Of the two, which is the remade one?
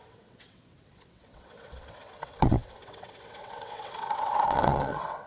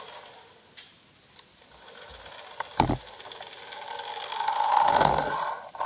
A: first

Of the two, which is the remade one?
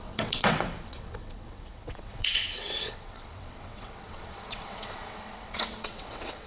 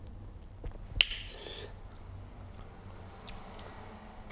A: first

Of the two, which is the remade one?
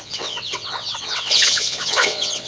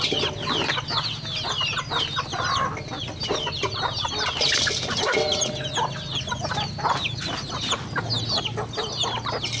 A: first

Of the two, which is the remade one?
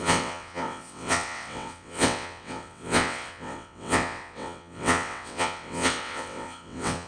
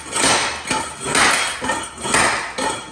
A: first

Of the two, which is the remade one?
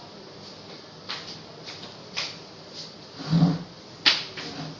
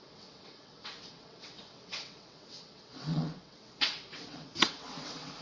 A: second